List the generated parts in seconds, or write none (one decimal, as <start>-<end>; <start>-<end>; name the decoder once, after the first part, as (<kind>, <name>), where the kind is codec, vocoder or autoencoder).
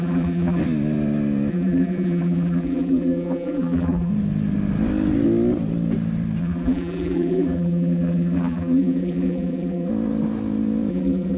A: 0.0-0.6 (vocoder, BigVGAN v2); 1.5-4.1; 6.4-9.9; 10.9-11.4